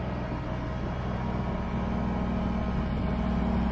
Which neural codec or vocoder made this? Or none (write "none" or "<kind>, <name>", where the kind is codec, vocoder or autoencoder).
none